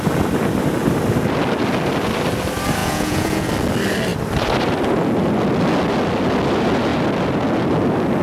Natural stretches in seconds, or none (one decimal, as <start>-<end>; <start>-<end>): 0.0-2.8; 3.5-8.2